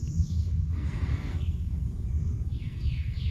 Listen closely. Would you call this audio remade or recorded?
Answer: remade